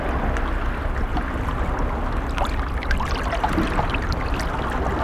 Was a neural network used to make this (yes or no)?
no